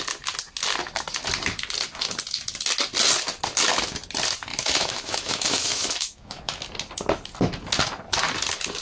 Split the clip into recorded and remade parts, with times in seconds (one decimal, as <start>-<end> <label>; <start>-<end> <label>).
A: 0.0-4.5 recorded; 4.5-6.6 remade; 6.6-8.8 recorded